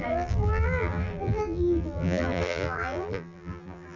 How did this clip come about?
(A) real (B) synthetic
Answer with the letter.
B